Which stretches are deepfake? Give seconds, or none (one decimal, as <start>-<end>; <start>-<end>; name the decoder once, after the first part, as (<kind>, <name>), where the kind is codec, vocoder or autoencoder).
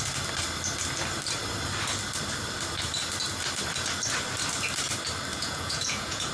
5.3-6.3 (vocoder, Vocos)